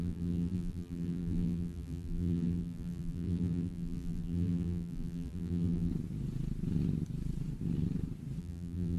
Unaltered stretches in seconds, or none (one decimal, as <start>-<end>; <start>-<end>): 5.9-8.4